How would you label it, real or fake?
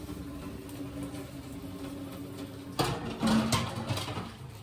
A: real